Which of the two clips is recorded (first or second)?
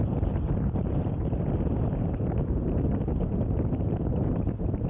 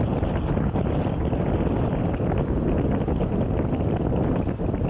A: second